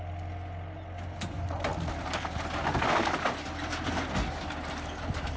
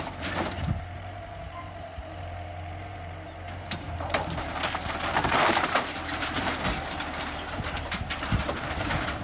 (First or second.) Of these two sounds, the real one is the first